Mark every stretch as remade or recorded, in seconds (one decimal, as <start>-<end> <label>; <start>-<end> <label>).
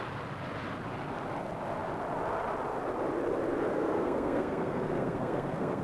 0.0-3.7 recorded; 3.7-5.8 remade